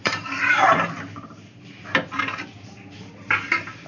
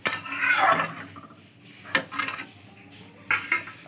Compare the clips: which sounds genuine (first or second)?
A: second